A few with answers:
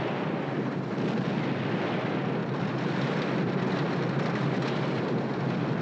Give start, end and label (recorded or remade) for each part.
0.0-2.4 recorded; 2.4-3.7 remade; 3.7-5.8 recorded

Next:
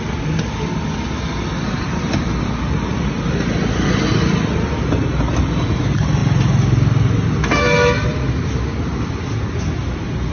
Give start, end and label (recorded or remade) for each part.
0.0-10.3 recorded

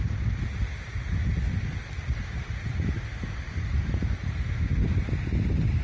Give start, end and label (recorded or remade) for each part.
0.0-3.1 recorded; 3.1-4.0 remade; 4.0-5.8 recorded

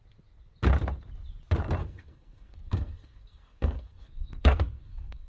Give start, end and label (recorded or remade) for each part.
0.0-1.8 recorded; 1.8-5.3 remade

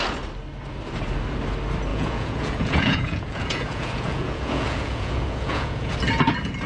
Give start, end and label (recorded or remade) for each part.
0.0-1.9 recorded; 1.9-5.9 remade; 5.9-6.7 recorded

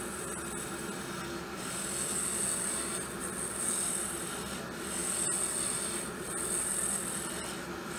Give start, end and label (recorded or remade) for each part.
0.0-8.0 recorded

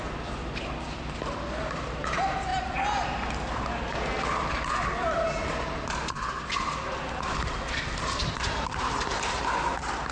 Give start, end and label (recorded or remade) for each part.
0.0-10.1 recorded